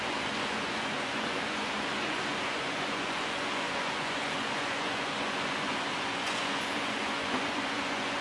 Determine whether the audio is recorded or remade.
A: remade